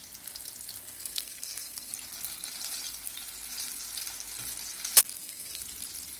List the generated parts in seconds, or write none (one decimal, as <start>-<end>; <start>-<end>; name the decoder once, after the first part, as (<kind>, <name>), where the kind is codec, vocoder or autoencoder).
0.8-1.9 (codec, SNAC); 5.0-5.6

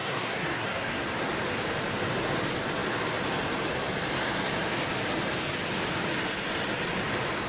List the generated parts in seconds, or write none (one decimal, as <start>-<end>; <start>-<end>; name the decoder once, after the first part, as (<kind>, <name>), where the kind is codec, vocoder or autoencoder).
0.0-1.0 (codec, SNAC)

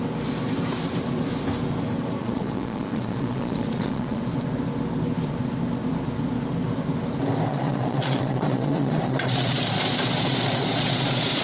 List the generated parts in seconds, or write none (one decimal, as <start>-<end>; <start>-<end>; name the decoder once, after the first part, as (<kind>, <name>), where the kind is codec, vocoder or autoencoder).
2.2-4.2 (vocoder, Vocos); 7.5-11.4

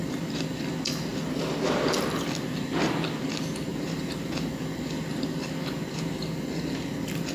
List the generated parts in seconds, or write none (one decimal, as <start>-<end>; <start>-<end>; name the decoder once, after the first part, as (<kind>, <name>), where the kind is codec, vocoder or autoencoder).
0.0-0.7 (vocoder, BigVGAN v2); 1.1-2.0; 3.7-5.1